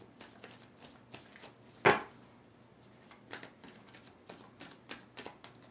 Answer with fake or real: real